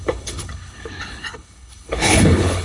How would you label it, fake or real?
fake